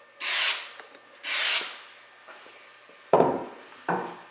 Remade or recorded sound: recorded